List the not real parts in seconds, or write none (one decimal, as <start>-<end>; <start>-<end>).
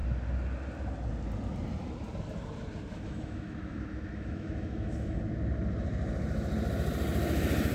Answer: 2.9-5.2